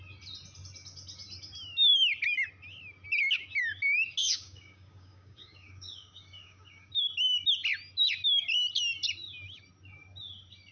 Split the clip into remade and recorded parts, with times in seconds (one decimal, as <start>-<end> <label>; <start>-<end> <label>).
0.0-4.2 recorded; 4.2-6.9 remade; 6.9-10.7 recorded